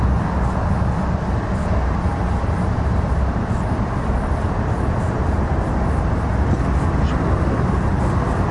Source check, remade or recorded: recorded